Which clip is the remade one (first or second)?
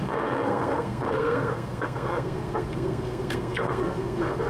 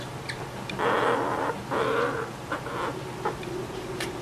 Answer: first